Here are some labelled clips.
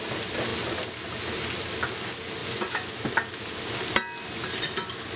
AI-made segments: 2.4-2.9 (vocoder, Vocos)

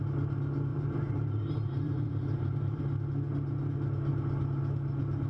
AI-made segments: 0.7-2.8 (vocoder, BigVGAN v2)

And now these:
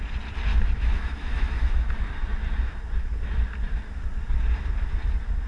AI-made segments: 0.5-1.9 (autoencoder, DAC-VAE)

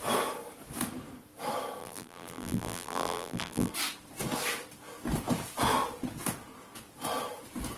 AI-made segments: 1.8-3.7 (vocoder, BigVGAN v2)

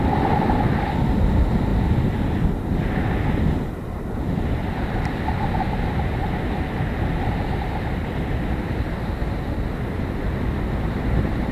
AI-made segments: 0.0-1.7 (vocoder, BigVGAN v2); 3.7-9.2; 10.8-11.5

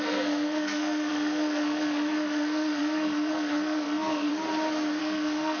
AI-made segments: 0.0-4.3 (codec, SNAC); 5.0-5.6